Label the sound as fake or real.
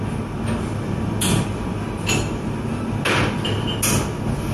real